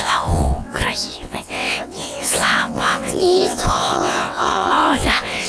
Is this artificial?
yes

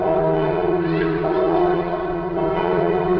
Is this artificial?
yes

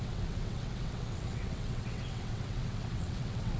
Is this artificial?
yes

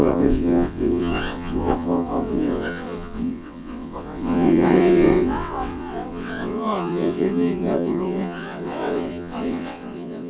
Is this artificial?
yes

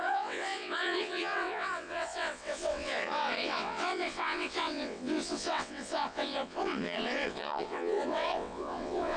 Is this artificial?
yes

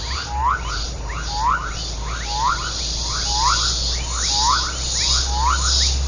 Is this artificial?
no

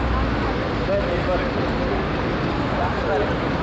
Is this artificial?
no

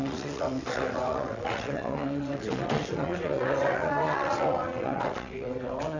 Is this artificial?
yes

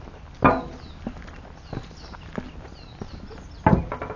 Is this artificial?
no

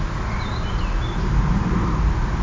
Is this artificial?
no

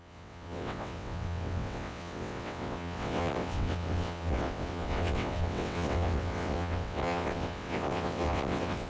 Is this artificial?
yes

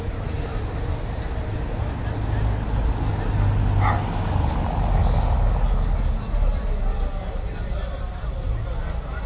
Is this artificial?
no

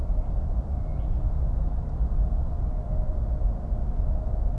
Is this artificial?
no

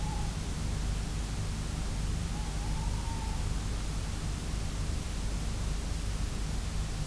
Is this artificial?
no